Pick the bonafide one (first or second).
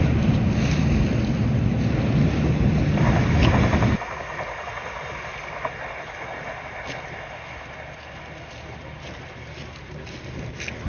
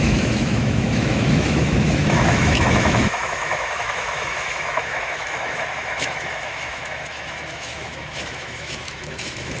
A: first